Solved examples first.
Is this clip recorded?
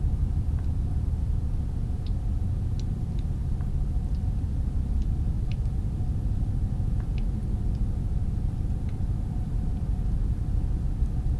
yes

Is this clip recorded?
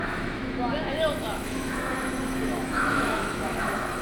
no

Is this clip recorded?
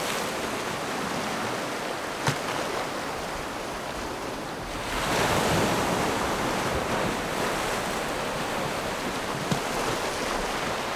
yes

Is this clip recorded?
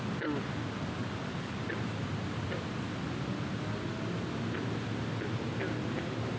yes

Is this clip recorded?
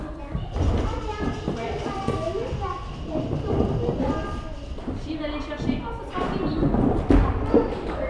yes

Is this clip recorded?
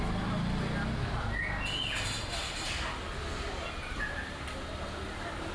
yes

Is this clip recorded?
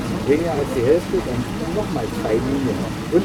yes